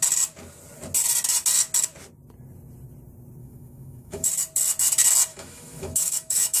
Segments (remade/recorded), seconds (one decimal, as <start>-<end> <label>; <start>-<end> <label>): 0.0-3.4 recorded; 3.4-4.3 remade; 4.3-5.3 recorded; 5.3-6.6 remade